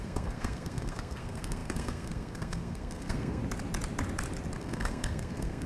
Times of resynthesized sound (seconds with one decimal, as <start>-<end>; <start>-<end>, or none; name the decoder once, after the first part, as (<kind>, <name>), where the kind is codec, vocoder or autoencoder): 0.0-3.4 (codec, SNAC); 4.6-5.7